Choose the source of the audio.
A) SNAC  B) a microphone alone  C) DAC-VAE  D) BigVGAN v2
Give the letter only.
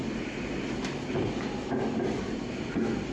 B